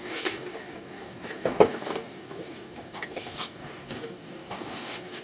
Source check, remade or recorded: remade